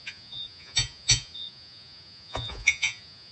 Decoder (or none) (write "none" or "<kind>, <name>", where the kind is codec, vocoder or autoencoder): vocoder, Vocos